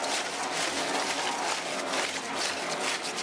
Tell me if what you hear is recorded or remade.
recorded